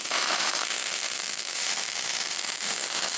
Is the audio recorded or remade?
remade